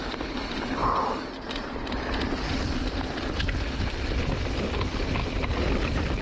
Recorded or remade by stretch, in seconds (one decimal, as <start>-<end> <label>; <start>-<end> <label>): 0.0-6.2 recorded